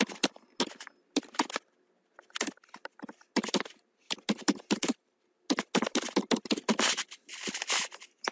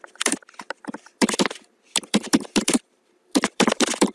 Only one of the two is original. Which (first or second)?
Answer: first